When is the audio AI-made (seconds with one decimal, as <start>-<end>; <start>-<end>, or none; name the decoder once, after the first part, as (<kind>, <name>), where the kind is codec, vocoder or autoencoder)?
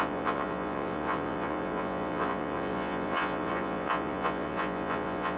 0.0-5.4 (vocoder, Vocos)